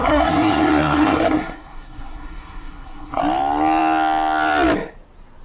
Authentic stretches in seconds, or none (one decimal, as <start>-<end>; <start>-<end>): 3.2-5.4